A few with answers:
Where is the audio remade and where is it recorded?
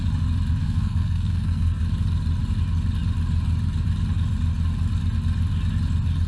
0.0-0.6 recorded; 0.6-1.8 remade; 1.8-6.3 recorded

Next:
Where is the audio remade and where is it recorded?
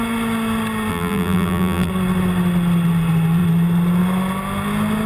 0.0-0.9 recorded; 0.9-1.9 remade; 1.9-5.1 recorded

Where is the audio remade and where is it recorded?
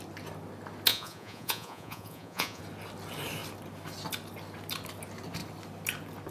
0.0-0.9 recorded; 0.9-2.6 remade; 2.6-6.3 recorded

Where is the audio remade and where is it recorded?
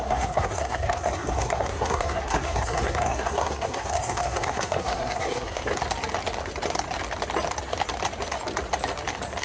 0.0-5.7 remade; 5.7-9.4 recorded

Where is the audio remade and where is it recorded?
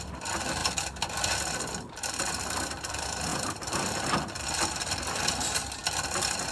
0.0-0.6 recorded; 0.6-1.1 remade; 1.1-3.3 recorded; 3.3-5.0 remade; 5.0-5.8 recorded; 5.8-6.5 remade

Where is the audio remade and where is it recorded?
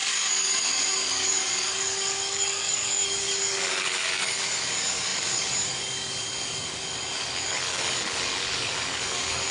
0.0-9.5 remade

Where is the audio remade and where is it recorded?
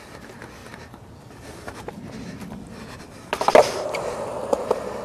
0.0-5.0 recorded